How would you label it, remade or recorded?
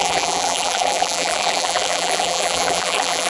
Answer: remade